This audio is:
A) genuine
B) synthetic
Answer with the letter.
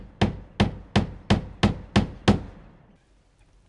A